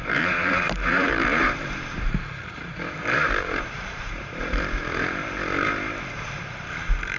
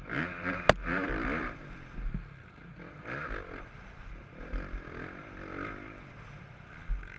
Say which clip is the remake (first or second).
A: first